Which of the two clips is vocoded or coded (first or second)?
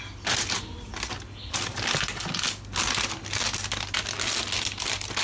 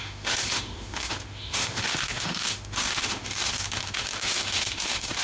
second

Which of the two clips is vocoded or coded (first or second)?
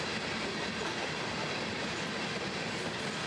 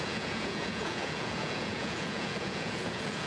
second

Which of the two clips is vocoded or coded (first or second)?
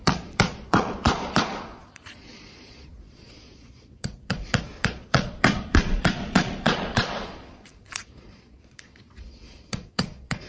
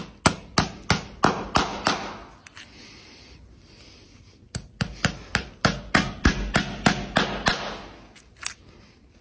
first